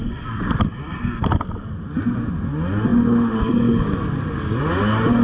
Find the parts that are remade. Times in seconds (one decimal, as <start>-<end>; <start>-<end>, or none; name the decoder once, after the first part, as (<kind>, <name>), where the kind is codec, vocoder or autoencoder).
0.0-0.9 (vocoder, BigVGAN v2)